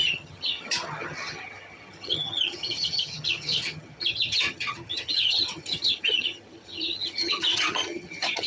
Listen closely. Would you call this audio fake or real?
fake